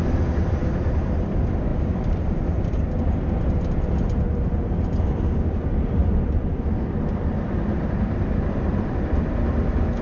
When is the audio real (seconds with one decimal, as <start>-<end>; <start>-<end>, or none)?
0.0-0.4; 1.0-6.0; 9.4-10.0